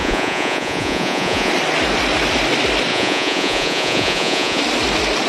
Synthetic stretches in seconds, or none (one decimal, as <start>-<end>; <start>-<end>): 0.0-1.5; 2.9-4.6